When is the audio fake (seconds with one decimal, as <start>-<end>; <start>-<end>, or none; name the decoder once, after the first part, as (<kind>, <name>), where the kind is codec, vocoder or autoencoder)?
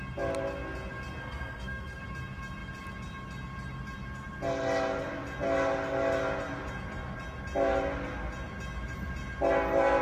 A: 1.2-2.0 (codec, SNAC)